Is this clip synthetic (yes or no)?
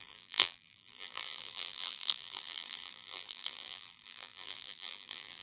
yes